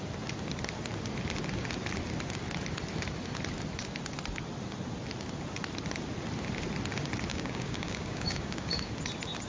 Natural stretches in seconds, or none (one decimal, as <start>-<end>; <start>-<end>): 0.0-7.3; 8.9-9.5